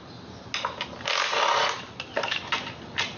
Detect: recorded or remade recorded